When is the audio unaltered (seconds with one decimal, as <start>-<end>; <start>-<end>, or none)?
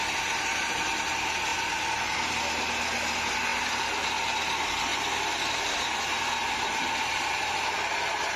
0.0-1.5; 2.3-4.9; 6.8-8.4